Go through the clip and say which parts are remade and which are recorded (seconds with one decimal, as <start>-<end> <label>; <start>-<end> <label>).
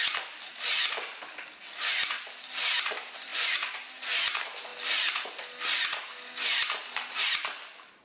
0.0-8.0 recorded